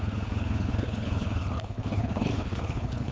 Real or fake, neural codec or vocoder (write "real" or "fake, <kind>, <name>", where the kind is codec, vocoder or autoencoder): fake, codec, HILCodec